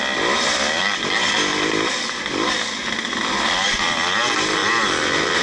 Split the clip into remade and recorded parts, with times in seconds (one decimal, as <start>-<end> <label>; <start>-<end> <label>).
0.0-5.4 recorded